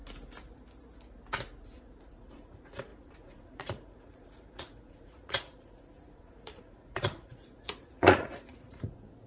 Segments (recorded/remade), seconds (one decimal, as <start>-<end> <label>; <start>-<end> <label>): 0.0-2.0 recorded; 2.0-9.3 remade